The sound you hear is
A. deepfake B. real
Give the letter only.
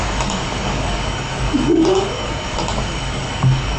A